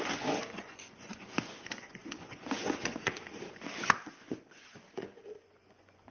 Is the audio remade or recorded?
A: remade